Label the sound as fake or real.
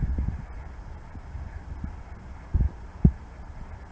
real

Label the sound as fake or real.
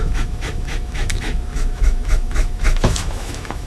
fake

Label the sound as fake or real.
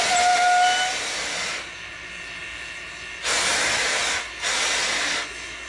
real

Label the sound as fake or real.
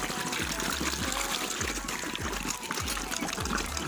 real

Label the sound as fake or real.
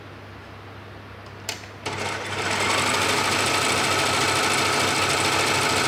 real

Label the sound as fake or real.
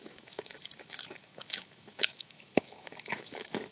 fake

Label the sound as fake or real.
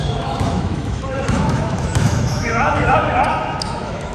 fake